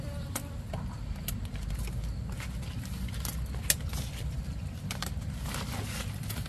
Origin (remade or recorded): recorded